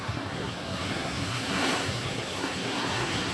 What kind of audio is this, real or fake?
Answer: fake